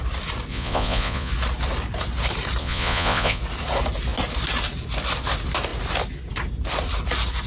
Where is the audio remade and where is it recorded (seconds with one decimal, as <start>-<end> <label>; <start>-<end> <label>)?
0.0-0.5 recorded; 0.5-1.3 remade; 1.3-2.6 recorded; 2.6-3.4 remade; 3.4-7.5 recorded